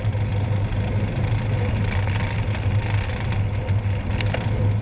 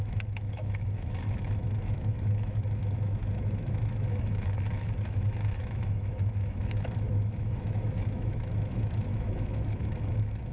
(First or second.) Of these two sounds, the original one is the first